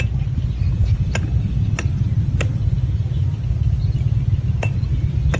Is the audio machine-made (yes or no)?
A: no